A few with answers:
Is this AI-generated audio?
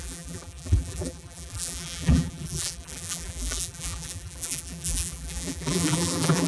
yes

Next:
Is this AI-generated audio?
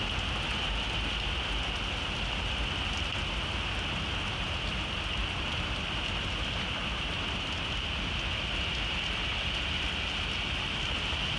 no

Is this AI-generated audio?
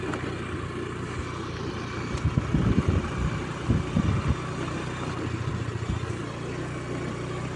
no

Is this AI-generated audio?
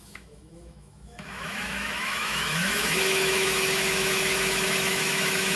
yes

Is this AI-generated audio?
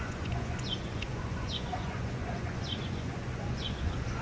yes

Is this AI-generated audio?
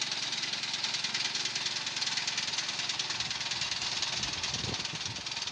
no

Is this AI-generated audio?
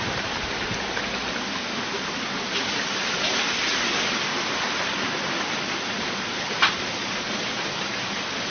no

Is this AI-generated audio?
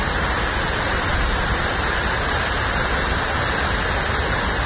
no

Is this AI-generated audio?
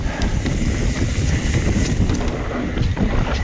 no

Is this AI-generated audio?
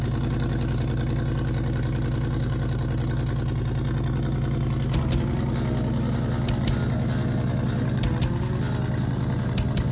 no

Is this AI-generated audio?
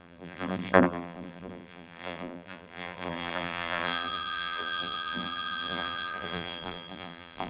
yes